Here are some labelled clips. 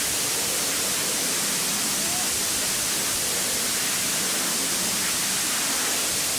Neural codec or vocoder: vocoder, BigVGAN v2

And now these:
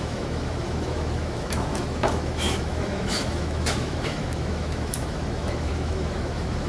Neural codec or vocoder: autoencoder, DAC-VAE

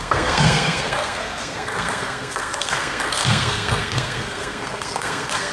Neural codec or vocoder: codec, SNAC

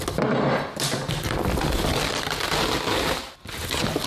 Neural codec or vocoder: none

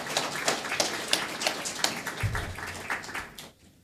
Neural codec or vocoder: none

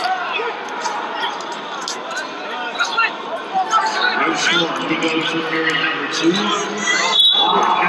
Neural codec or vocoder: none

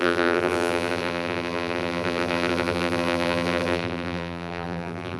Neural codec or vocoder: vocoder, BigVGAN v2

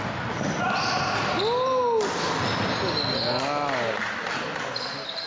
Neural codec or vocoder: none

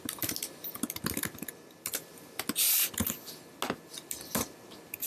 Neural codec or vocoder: none